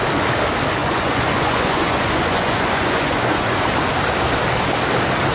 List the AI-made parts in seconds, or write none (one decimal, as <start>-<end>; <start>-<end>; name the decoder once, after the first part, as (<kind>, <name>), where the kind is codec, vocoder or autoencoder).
0.8-3.6 (vocoder, Vocos)